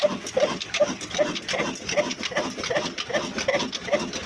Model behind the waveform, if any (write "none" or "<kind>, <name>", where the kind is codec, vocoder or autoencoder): none